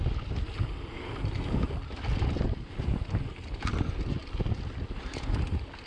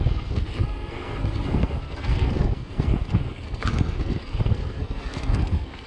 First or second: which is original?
first